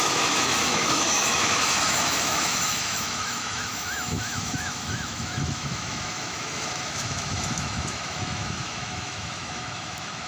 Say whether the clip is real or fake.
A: fake